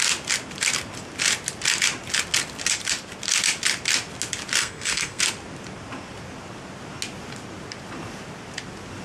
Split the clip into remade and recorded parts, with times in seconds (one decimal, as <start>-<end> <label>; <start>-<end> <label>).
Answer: 0.0-4.6 recorded; 4.6-5.2 remade; 5.2-9.0 recorded